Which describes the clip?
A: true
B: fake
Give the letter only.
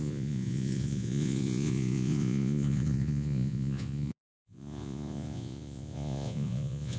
B